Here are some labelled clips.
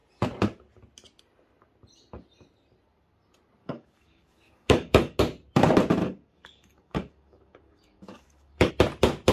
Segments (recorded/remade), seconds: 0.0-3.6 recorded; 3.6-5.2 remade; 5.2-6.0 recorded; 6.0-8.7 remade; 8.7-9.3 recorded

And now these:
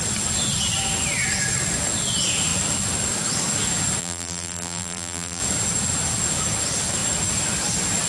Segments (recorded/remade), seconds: 0.0-4.0 recorded; 4.0-5.4 remade; 5.4-8.1 recorded